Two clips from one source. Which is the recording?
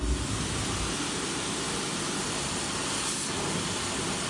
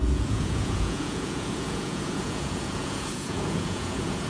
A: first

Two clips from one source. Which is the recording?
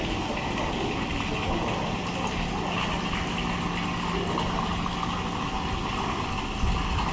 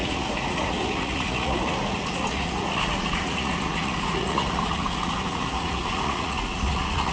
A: first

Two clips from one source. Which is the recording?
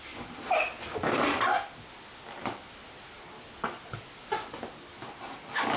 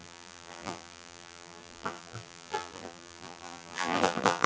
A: first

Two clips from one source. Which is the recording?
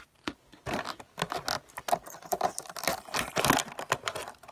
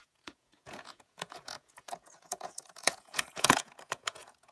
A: first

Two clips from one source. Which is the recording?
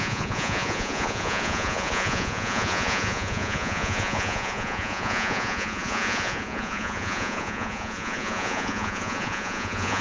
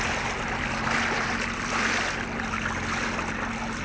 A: second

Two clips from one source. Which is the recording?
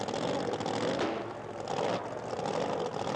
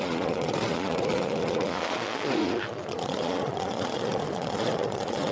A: first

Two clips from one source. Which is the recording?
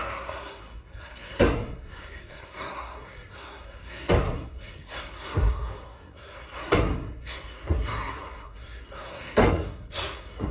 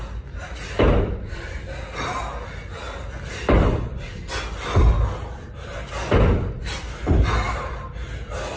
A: second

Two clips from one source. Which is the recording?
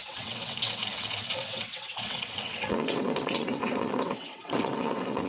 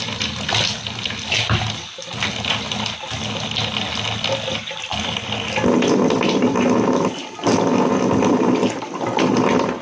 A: second